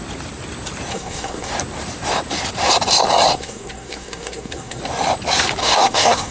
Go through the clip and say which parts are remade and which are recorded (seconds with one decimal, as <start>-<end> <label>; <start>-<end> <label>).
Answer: 0.0-0.9 recorded; 0.9-1.5 remade; 1.5-3.3 recorded; 3.3-4.8 remade; 4.8-5.6 recorded; 5.6-6.3 remade